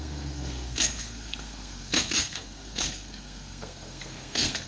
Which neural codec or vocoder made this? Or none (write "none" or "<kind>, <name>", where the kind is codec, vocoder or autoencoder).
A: codec, SNAC